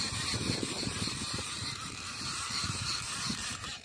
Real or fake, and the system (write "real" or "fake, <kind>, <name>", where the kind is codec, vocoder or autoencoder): fake, vocoder, BigVGAN v2